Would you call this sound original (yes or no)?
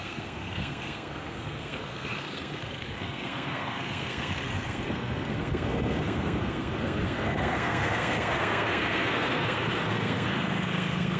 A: no